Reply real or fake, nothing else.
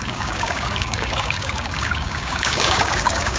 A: fake